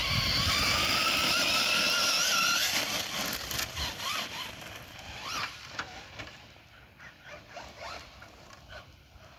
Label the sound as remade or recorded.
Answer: recorded